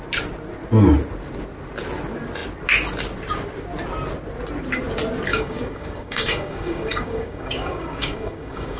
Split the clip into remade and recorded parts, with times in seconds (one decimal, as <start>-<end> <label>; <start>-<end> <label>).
0.0-5.3 recorded; 5.3-8.8 remade